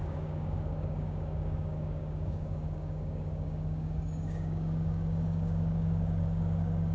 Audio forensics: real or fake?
fake